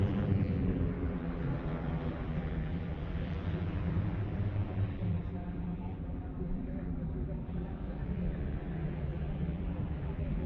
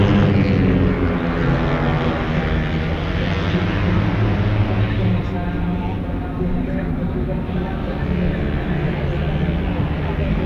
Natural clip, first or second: second